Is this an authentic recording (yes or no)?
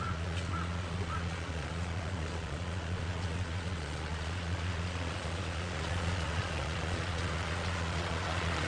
no